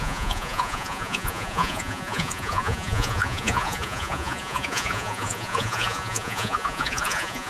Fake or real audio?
fake